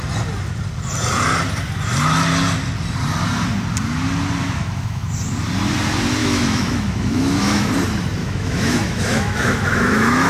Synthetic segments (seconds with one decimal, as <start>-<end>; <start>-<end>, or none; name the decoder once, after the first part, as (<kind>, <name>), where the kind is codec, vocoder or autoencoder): 4.4-5.1 (autoencoder, DAC-VAE); 6.2-7.7; 8.2-10.3